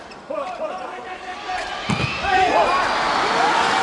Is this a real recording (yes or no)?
yes